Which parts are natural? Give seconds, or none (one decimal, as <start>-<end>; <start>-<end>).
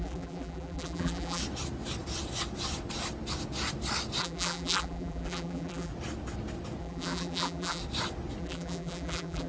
1.4-4.2; 5.9-6.8; 7.8-8.4